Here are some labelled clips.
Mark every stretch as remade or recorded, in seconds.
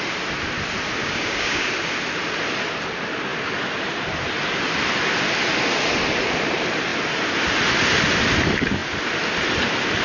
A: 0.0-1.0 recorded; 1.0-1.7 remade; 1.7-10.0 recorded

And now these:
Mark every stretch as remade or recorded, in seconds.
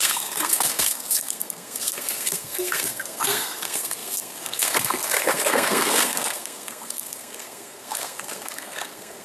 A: 0.0-9.2 remade